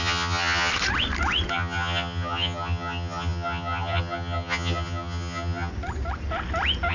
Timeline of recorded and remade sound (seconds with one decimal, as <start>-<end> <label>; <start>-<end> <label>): 0.0-0.7 remade; 0.7-1.5 recorded; 1.5-5.7 remade; 5.7-6.9 recorded